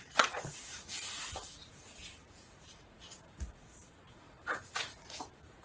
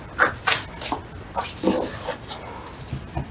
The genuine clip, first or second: second